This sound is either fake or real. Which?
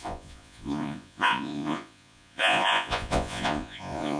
fake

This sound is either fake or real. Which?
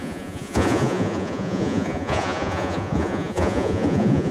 fake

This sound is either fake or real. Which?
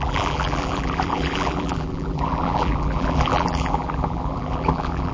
fake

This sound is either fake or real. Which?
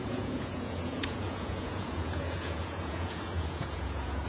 fake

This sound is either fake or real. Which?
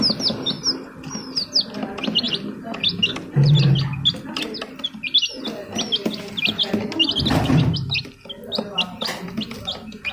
real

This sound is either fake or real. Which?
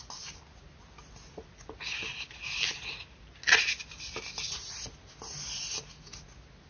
real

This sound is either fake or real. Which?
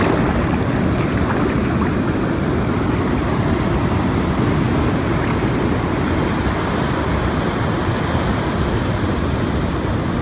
real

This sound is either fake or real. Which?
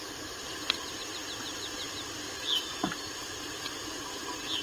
real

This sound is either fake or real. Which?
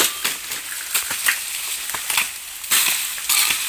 real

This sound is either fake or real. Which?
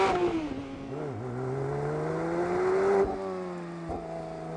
real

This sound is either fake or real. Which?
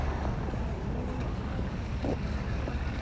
fake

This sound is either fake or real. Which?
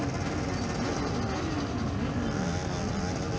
real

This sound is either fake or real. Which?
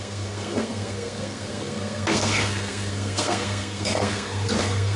fake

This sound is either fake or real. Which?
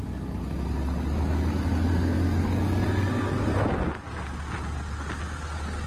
real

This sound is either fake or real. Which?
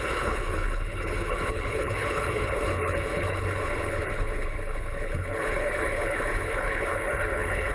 fake